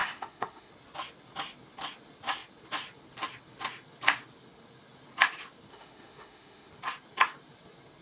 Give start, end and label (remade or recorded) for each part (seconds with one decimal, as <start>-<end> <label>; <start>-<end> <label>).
0.0-0.7 remade; 0.7-5.7 recorded; 5.7-6.7 remade; 6.7-8.0 recorded